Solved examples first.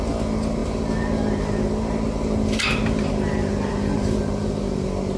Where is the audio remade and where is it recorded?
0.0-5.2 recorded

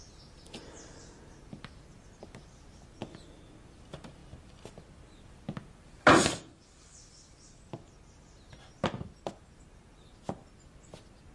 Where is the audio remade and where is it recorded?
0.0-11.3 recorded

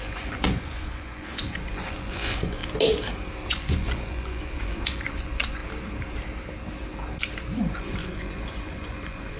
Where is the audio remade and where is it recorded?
0.0-2.6 remade; 2.6-3.5 recorded; 3.5-5.6 remade; 5.6-7.7 recorded; 7.7-9.4 remade

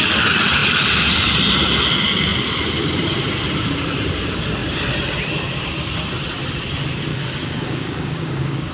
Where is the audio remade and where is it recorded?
0.0-7.1 recorded; 7.1-8.7 remade